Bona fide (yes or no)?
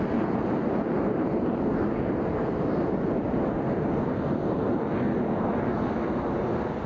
yes